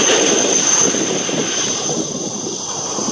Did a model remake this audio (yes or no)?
yes